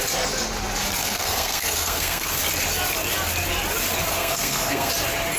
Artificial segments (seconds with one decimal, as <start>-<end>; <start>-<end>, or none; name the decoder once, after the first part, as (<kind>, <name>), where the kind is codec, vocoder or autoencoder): 1.0-2.4 (codec, SNAC); 4.1-4.9